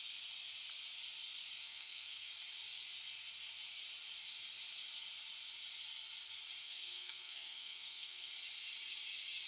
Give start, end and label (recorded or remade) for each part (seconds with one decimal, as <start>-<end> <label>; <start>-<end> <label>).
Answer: 0.0-1.6 recorded; 1.6-2.3 remade; 2.3-6.6 recorded; 6.6-8.3 remade; 8.3-9.5 recorded